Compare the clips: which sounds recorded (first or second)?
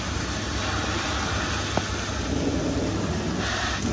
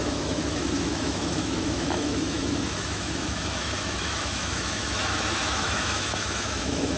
first